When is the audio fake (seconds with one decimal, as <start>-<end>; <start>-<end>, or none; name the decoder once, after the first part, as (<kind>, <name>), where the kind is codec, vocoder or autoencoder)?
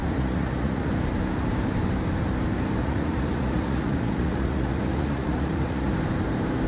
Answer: 0.0-0.9 (vocoder, Vocos); 2.8-5.9